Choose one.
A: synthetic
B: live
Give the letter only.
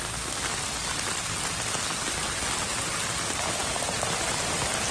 B